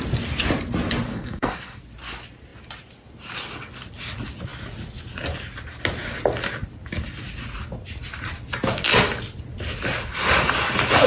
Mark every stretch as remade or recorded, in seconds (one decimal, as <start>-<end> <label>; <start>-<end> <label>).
0.0-1.1 recorded; 1.1-1.8 remade; 1.8-11.1 recorded